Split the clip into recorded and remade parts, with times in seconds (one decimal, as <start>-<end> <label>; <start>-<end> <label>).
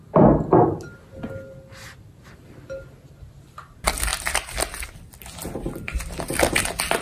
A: 0.0-7.0 recorded